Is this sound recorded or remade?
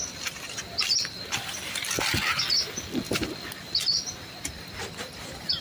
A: recorded